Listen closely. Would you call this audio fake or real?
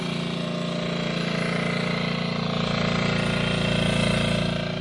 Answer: real